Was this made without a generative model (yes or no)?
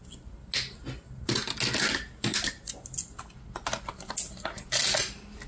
yes